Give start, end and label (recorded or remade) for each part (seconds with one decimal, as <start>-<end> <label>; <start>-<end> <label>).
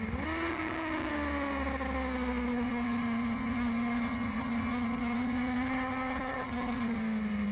0.0-0.5 recorded; 0.5-1.1 remade; 1.1-2.5 recorded; 2.5-7.0 remade; 7.0-7.5 recorded